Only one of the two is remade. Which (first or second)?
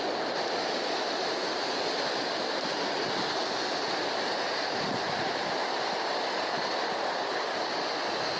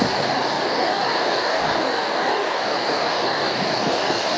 second